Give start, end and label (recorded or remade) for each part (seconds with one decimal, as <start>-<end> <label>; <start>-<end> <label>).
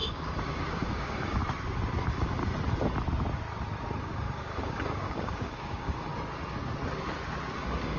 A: 0.0-1.4 remade; 1.4-2.0 recorded; 2.0-2.4 remade; 2.4-4.0 recorded; 4.0-6.1 remade; 6.1-7.5 recorded; 7.5-8.0 remade